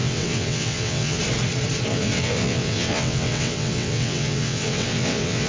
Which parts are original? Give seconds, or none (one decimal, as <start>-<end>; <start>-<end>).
1.2-1.9